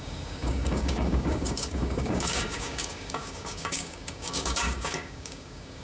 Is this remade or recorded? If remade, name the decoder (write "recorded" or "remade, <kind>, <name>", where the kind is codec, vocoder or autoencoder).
remade, codec, DAC